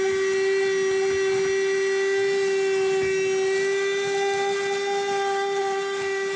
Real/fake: real